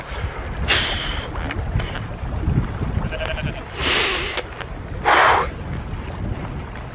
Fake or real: real